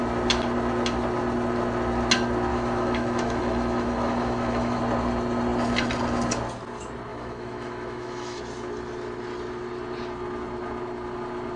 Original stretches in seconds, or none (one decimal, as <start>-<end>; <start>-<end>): 0.0-2.5; 4.8-7.1; 8.4-11.6